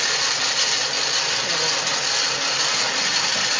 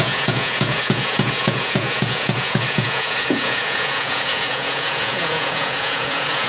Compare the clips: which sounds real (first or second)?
first